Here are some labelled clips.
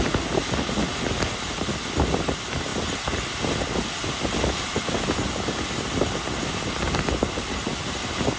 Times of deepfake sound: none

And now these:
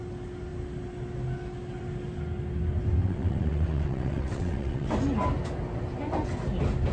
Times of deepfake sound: 3.0-4.9 (vocoder, WaveNeXt)

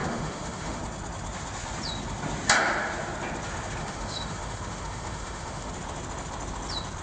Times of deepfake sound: 0.0-0.8 (autoencoder, DAC-VAE); 3.8-5.7

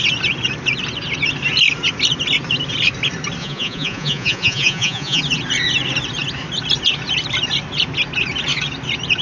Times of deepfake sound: 3.4-5.2 (vocoder, Vocos)

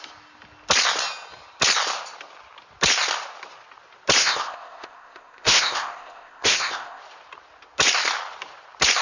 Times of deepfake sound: 4.2-7.0 (codec, ZipCodec)

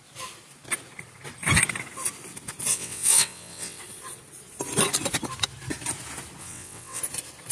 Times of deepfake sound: 2.7-3.8 (vocoder, WaveNeXt); 6.4-7.0

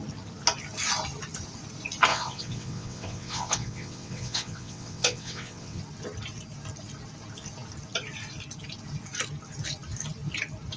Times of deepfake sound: 2.1-5.8 (vocoder, WaveNeXt)